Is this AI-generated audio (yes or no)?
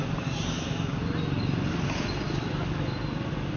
no